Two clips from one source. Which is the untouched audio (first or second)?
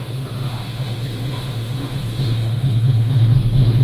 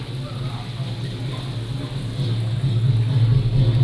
second